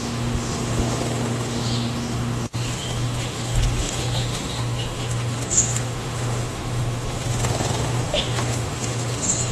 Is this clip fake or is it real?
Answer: fake